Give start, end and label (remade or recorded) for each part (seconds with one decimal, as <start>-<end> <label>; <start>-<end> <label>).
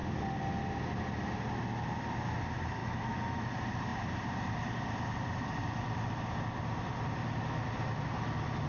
0.0-2.8 recorded; 2.8-3.5 remade; 3.5-8.7 recorded